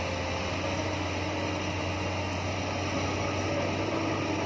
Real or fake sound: real